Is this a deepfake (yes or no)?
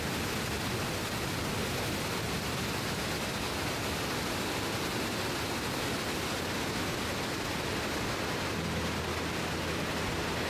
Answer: no